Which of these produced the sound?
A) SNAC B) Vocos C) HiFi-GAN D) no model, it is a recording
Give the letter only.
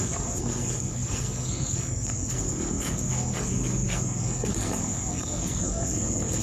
A